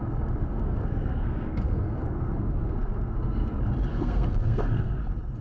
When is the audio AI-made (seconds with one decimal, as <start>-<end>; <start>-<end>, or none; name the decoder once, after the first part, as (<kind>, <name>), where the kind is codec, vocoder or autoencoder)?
0.4-3.5 (codec, SNAC); 3.9-5.0